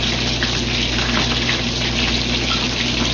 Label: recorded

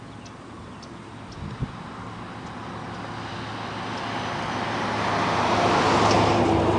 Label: recorded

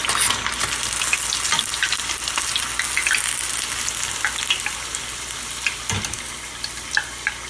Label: recorded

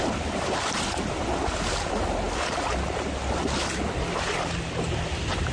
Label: recorded